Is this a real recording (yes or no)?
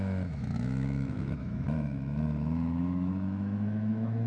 no